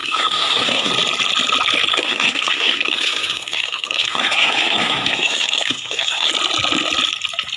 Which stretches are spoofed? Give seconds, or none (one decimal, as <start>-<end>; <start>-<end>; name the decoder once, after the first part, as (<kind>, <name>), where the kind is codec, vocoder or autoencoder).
0.0-0.9 (codec, SNAC); 1.9-6.3